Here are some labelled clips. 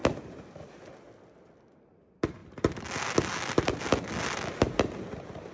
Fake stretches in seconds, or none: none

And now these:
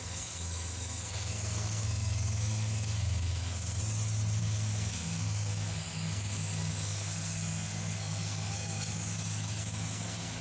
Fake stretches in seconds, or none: 0.0-3.8 (codec, SNAC); 4.4-10.4